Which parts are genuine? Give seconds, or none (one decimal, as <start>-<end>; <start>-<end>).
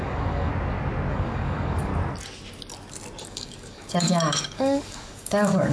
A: 0.5-1.1; 1.9-3.2